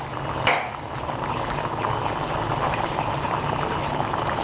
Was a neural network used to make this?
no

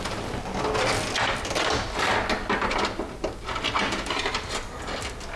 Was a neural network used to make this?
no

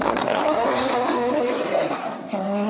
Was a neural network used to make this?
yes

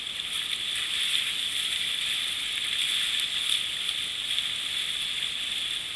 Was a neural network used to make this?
no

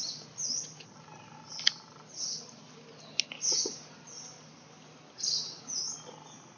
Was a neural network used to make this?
no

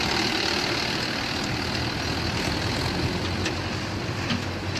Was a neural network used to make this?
no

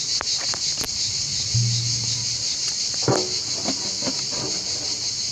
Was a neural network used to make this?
no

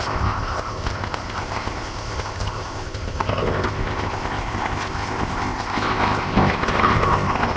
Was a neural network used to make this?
yes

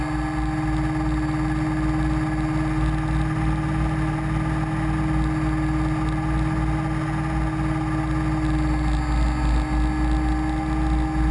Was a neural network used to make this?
no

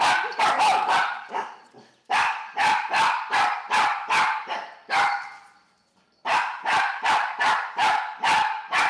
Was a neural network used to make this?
no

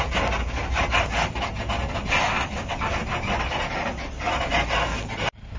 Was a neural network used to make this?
no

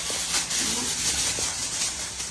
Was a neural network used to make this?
no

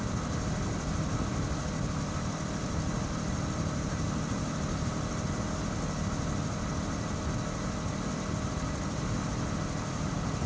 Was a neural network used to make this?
no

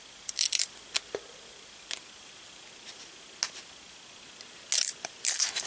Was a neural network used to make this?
no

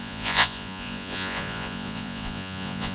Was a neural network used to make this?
yes